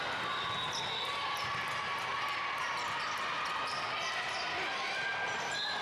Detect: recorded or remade recorded